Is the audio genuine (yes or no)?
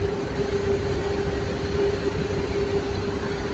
yes